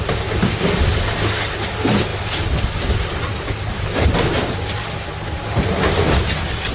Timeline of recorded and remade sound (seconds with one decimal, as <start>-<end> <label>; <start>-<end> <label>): 0.0-6.7 recorded